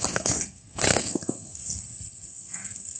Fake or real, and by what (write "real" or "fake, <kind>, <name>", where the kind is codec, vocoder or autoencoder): fake, codec, SNAC